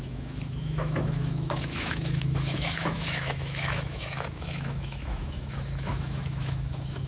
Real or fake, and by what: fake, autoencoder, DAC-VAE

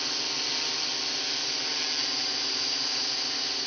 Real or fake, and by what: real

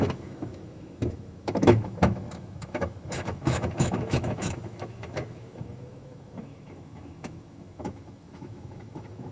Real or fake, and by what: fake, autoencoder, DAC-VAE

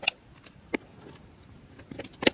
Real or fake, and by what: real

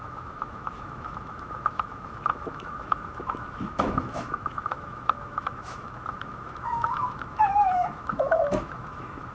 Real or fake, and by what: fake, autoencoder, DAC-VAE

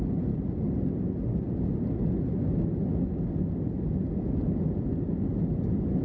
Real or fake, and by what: real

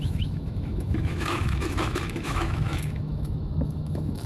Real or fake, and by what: fake, autoencoder, DAC-VAE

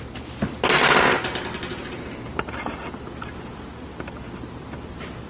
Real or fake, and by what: real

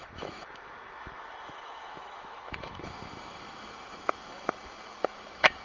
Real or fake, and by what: fake, autoencoder, DAC-VAE